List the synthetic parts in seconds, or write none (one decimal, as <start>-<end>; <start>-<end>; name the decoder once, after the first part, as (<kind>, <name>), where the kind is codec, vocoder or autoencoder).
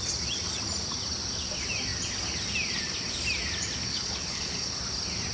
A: 3.9-4.8 (codec, HILCodec)